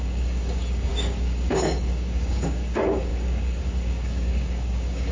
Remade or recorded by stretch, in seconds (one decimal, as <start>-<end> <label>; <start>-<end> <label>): 0.0-5.1 remade